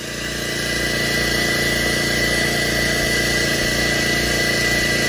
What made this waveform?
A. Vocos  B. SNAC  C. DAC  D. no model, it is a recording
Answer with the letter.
D